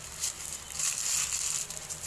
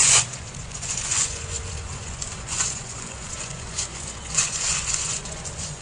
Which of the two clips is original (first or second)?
first